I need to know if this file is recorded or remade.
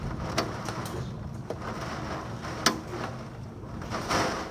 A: recorded